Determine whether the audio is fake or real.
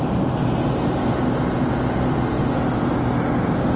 real